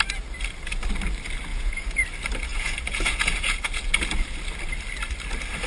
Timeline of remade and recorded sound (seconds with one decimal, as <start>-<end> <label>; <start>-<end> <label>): 0.0-1.5 recorded; 1.5-2.0 remade; 2.0-2.5 recorded; 2.5-3.8 remade; 3.8-5.7 recorded